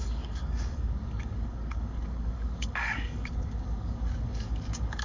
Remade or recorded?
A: remade